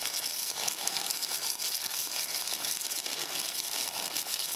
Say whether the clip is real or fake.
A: fake